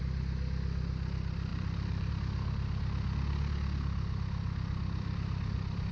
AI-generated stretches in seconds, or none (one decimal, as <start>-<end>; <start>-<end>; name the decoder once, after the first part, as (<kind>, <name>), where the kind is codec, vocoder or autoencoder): 1.5-2.1 (vocoder, BigVGAN v2)